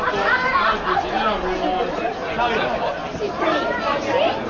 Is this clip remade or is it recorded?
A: recorded